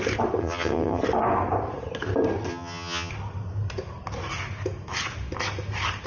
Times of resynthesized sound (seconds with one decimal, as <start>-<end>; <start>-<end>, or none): 0.4-1.0; 2.5-3.1